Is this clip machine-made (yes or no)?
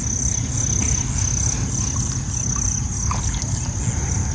no